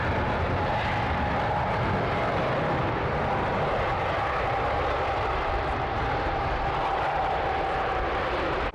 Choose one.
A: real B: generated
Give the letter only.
A